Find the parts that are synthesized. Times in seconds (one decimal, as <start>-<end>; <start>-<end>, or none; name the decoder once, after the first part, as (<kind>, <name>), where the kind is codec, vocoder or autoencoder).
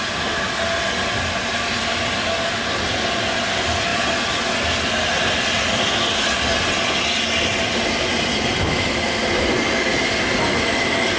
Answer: none